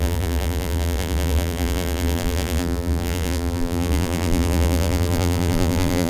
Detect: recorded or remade remade